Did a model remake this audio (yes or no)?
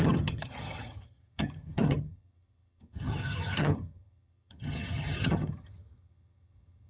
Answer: yes